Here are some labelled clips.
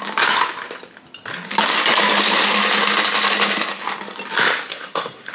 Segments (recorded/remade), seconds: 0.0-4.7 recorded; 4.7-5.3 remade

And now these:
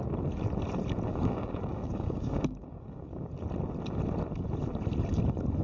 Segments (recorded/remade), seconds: 0.0-1.1 recorded; 1.1-3.3 remade; 3.3-5.6 recorded